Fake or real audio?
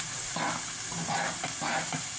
real